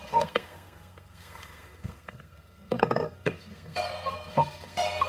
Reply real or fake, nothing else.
fake